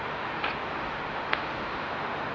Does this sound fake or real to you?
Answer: fake